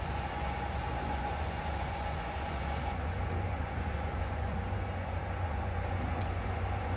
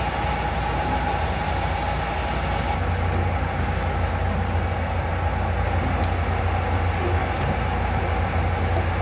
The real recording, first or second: second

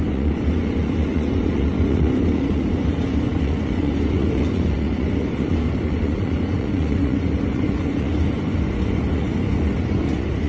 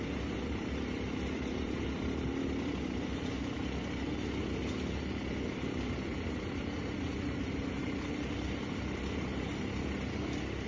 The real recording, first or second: second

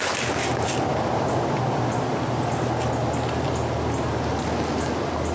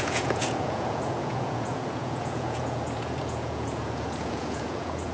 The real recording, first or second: first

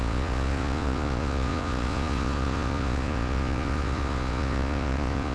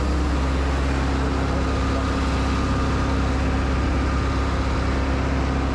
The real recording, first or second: second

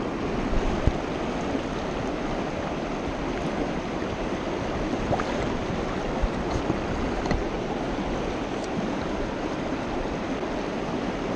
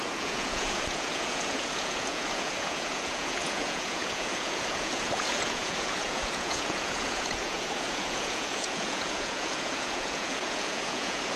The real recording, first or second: first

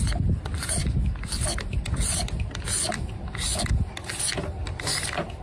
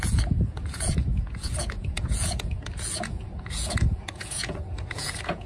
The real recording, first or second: first